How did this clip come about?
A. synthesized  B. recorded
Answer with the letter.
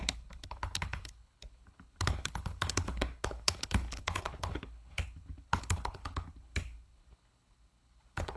A